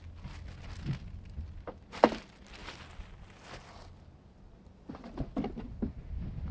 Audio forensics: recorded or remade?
recorded